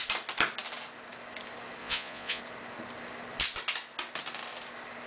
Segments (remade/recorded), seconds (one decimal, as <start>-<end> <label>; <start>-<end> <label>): 0.0-1.8 recorded; 1.8-2.4 remade; 2.4-5.1 recorded